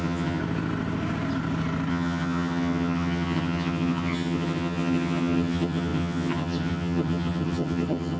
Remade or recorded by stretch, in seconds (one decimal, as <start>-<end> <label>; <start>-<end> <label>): 0.0-0.4 remade; 0.4-1.9 recorded; 1.9-8.2 remade